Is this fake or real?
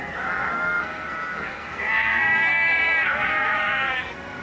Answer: fake